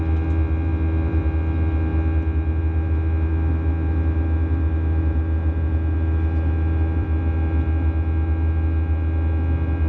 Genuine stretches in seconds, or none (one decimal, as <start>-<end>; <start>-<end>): 0.0-0.7; 1.2-3.3; 7.2-9.9